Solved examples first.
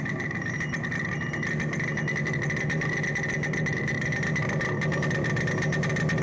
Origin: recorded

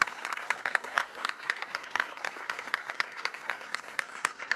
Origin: remade